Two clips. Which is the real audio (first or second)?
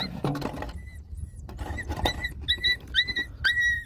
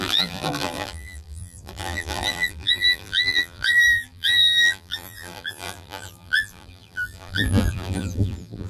first